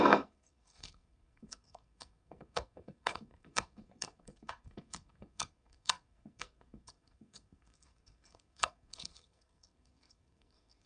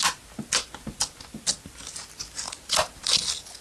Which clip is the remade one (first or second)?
first